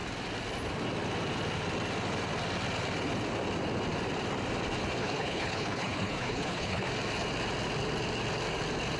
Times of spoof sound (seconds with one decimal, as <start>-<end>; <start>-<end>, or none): 5.0-6.9